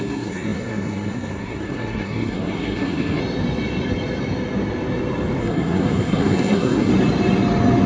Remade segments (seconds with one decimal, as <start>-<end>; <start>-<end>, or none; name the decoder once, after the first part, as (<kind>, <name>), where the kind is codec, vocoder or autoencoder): 0.0-3.2 (codec, SNAC); 5.4-6.9